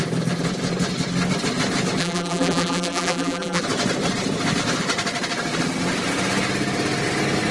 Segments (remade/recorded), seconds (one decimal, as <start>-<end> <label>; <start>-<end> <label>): 0.0-2.0 recorded; 2.0-3.6 remade; 3.6-7.5 recorded